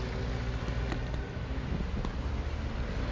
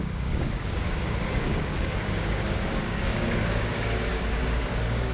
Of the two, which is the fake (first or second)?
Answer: second